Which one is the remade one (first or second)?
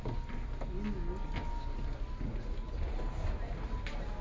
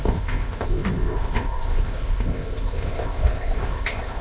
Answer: second